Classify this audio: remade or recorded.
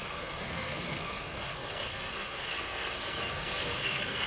remade